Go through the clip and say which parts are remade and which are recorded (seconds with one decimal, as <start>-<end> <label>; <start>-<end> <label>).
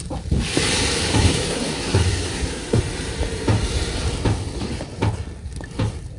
0.0-1.1 recorded; 1.1-2.8 remade; 2.8-6.2 recorded